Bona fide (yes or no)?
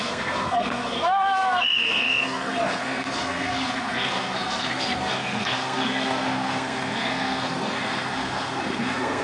no